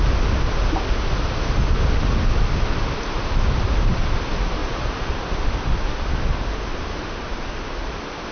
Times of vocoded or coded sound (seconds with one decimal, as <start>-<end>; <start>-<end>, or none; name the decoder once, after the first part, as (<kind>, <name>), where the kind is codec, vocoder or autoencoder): 4.6-5.1 (vocoder, Vocos)